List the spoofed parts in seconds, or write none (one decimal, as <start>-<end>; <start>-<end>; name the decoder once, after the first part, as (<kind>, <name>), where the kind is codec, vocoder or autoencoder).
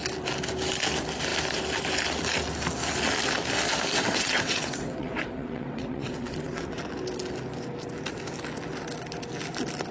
3.9-6.8 (vocoder, WaveNeXt)